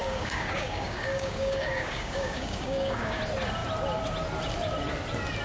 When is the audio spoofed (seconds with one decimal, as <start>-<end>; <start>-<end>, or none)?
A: 0.0-3.2

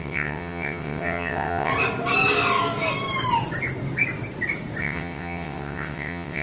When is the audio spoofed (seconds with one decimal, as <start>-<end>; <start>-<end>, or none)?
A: 0.0-1.7; 4.8-6.4